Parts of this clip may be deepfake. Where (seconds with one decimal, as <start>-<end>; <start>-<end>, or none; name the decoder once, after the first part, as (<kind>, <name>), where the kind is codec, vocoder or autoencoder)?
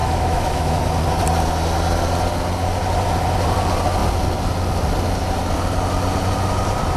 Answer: 0.0-0.8 (autoencoder, DAC-VAE)